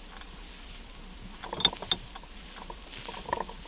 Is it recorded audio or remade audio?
recorded